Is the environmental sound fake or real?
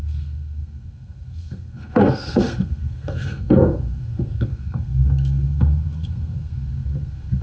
fake